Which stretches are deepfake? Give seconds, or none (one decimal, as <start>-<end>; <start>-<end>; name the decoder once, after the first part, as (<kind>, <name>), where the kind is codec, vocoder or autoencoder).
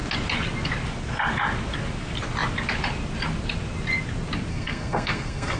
4.5-5.6 (codec, SNAC)